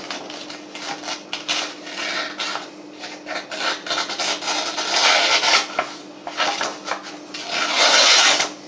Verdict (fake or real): real